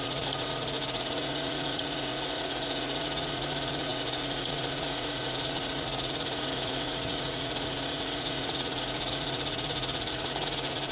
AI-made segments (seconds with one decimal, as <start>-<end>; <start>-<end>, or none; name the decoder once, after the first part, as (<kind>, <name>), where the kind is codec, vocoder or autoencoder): 0.0-10.9 (vocoder, Vocos)